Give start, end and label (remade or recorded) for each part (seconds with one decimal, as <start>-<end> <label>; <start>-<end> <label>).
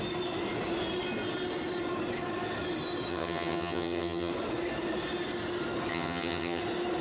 0.0-3.1 recorded; 3.1-4.3 remade; 4.3-5.9 recorded; 5.9-6.6 remade; 6.6-7.0 recorded